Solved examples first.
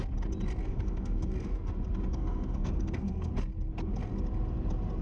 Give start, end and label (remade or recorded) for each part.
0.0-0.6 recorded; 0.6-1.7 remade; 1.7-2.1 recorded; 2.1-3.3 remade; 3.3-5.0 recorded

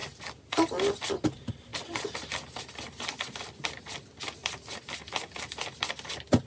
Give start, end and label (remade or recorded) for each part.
0.0-6.5 recorded

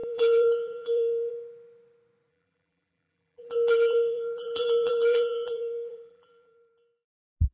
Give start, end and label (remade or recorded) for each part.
0.0-1.3 remade; 1.3-2.3 recorded; 2.3-6.8 remade; 6.8-7.5 recorded

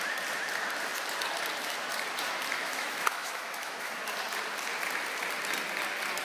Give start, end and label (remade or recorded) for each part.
0.0-2.6 recorded; 2.6-3.9 remade; 3.9-6.2 recorded

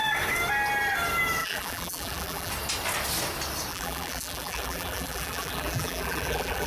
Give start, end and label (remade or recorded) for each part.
0.0-1.4 recorded; 1.4-2.5 remade; 2.5-3.7 recorded; 3.7-6.7 remade